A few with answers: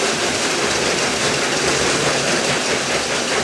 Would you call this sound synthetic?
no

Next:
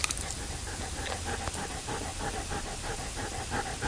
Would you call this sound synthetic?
no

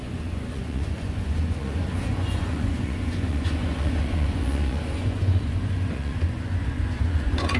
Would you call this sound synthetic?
yes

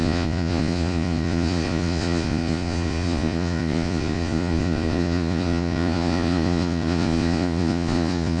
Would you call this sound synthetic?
yes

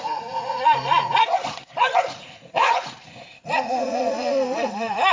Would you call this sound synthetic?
yes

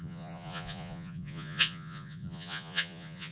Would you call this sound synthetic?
yes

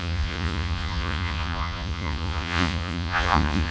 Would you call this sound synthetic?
yes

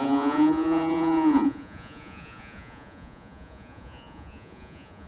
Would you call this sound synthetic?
yes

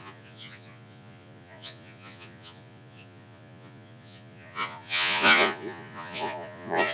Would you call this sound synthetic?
yes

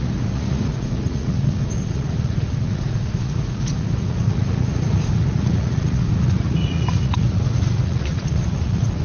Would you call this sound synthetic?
yes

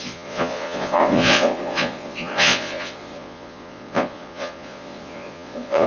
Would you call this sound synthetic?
yes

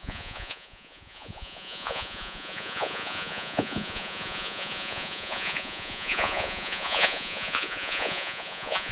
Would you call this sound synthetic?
yes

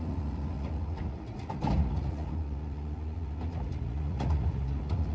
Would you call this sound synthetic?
yes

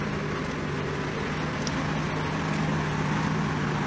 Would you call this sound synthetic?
no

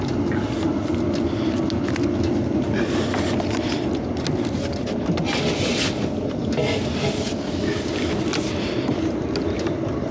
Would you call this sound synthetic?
no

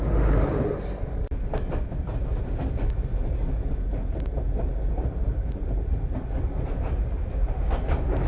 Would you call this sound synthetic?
no